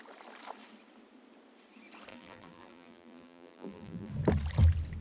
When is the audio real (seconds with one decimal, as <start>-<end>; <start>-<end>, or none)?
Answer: 0.0-2.1; 4.1-5.0